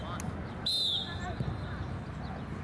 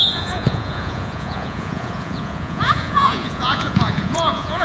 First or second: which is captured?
first